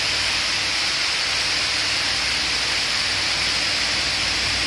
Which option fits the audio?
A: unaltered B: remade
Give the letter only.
A